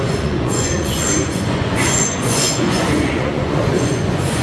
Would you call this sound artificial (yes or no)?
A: yes